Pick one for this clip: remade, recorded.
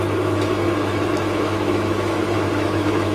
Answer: remade